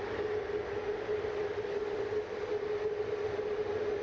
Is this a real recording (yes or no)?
yes